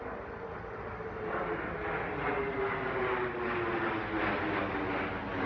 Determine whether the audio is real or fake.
real